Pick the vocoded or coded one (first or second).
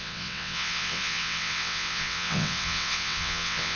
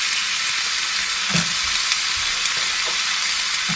first